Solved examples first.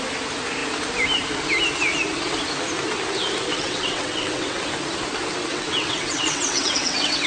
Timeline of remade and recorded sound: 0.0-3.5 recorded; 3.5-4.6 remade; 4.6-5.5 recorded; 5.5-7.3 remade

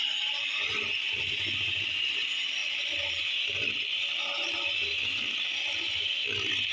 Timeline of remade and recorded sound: 0.0-6.7 recorded